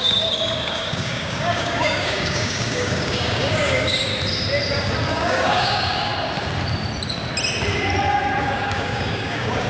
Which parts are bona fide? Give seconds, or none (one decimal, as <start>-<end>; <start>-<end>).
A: 4.1-5.1; 6.1-8.4